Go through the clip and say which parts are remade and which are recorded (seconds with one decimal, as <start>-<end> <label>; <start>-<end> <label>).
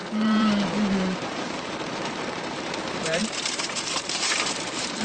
0.0-5.0 remade